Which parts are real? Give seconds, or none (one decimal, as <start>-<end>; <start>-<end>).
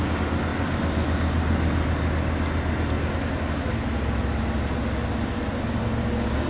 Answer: 0.0-6.5